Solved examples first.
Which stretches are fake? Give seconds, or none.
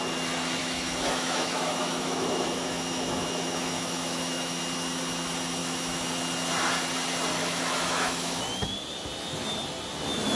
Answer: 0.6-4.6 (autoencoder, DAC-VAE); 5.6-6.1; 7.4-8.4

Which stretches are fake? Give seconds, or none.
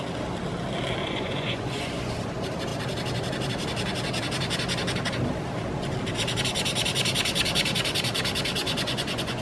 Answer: 1.0-2.1 (vocoder, Vocos); 8.6-9.4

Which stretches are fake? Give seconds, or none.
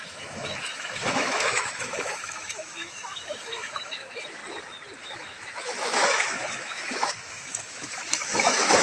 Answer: 0.0-4.4 (autoencoder, DAC-VAE); 5.0-8.8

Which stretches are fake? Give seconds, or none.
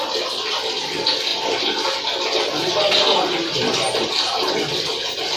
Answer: none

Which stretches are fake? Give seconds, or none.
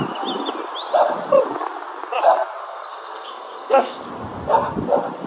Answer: 2.6-4.0 (codec, SNAC)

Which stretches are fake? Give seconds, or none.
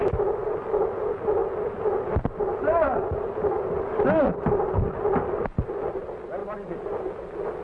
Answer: none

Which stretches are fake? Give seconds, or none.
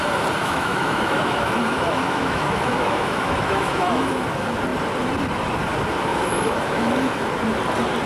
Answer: 0.4-4.1 (autoencoder, DAC-VAE); 6.1-7.3